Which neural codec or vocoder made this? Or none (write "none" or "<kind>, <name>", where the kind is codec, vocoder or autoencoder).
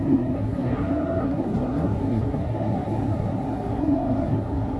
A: codec, SNAC